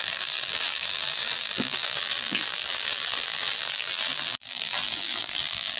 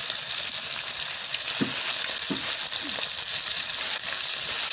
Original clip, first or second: second